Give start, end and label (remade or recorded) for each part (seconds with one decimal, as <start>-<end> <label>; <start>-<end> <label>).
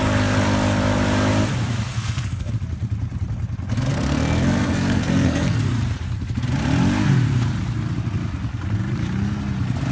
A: 0.0-1.9 recorded; 1.9-2.5 remade; 2.5-3.9 recorded; 3.9-5.6 remade; 5.6-9.9 recorded